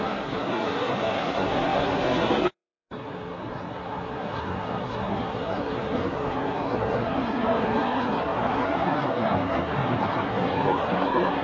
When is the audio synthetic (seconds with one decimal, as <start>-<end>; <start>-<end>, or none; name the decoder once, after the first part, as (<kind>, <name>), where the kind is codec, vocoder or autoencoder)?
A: 0.0-11.4 (codec, SNAC)